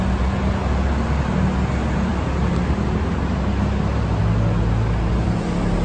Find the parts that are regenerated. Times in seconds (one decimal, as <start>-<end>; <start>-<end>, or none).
none